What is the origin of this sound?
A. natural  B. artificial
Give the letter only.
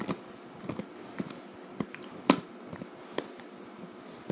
A